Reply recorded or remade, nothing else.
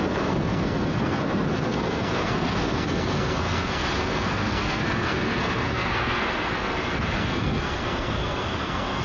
remade